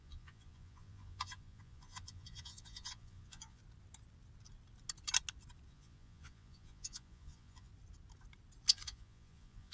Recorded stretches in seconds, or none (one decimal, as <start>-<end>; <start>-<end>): 3.6-5.7; 7.7-8.7

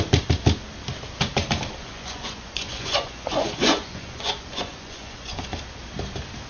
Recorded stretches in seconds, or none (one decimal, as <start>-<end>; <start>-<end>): 0.0-1.8; 5.4-6.5

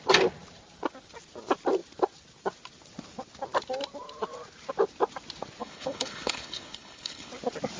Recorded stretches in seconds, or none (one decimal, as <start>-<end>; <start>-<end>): 0.0-5.6; 7.3-7.8

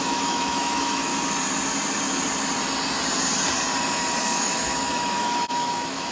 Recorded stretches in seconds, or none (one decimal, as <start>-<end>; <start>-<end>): 1.1-4.2

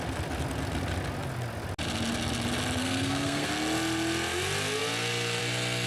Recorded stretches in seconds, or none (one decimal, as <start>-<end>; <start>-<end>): 0.0-2.8; 3.5-5.9

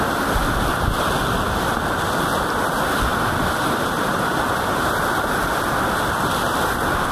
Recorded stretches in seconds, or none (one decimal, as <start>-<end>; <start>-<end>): 0.0-7.1

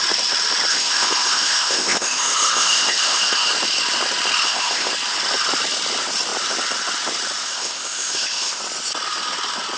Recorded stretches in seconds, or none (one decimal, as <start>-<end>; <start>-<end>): 0.0-0.7; 3.5-4.4; 4.9-7.4; 8.6-9.8

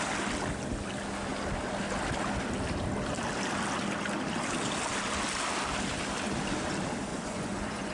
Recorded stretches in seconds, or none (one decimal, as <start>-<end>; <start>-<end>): 0.0-7.1